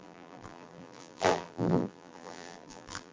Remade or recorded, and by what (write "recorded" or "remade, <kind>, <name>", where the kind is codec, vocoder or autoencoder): remade, vocoder, BigVGAN v2